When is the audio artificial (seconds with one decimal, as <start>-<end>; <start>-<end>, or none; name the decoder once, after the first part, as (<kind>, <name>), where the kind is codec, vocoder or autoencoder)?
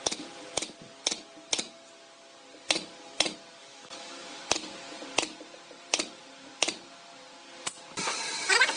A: 3.6-4.4 (autoencoder, DAC-VAE)